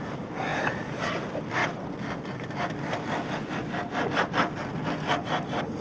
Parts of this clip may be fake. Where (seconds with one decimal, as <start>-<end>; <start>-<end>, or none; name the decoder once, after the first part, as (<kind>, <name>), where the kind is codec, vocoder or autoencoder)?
none